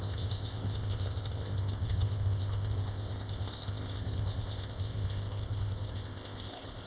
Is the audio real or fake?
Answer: fake